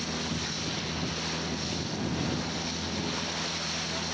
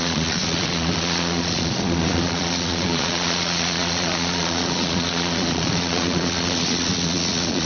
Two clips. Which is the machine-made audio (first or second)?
second